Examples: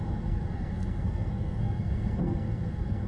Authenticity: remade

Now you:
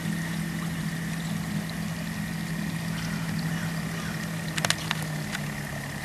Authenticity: recorded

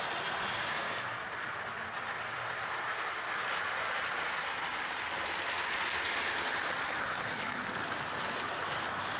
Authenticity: recorded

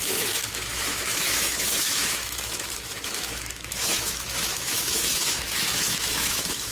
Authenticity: remade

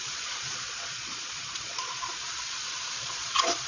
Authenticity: remade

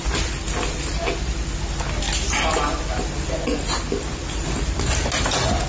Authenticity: recorded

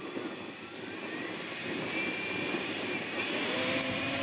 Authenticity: remade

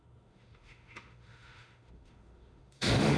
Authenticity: remade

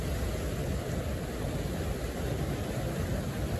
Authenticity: recorded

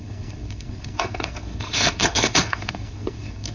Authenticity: remade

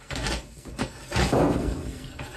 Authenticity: remade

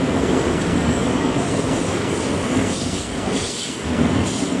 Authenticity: remade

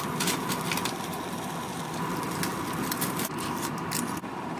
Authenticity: recorded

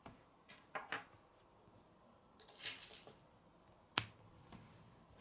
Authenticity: recorded